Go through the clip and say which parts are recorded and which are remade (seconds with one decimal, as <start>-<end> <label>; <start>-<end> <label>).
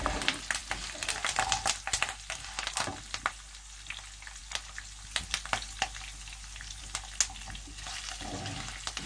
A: 0.0-9.1 recorded